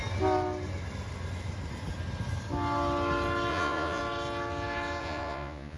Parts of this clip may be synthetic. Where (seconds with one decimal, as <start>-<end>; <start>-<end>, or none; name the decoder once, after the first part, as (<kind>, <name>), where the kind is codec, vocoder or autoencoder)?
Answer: 3.5-4.0 (vocoder, Vocos); 5.0-5.8